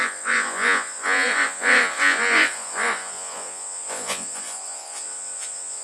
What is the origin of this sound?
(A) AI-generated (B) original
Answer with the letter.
A